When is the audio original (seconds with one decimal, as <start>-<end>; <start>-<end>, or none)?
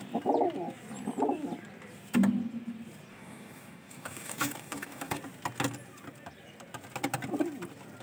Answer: 0.0-3.1; 5.2-8.0